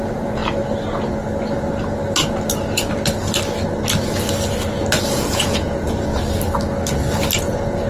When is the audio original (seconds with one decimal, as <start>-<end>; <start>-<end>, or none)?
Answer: 0.4-5.1; 6.1-7.4